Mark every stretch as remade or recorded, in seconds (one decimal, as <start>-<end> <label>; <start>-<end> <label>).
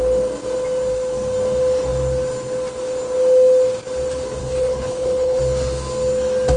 0.0-4.4 recorded; 4.4-5.4 remade; 5.4-6.6 recorded